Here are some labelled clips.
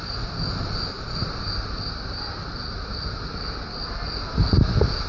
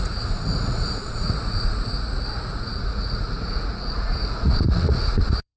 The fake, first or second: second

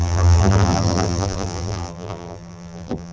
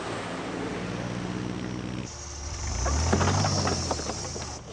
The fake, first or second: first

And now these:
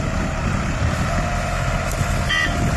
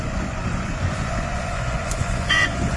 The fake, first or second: second